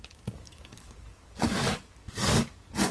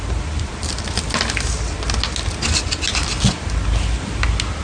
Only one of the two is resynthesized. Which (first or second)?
first